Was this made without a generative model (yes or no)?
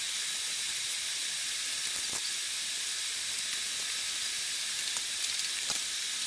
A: yes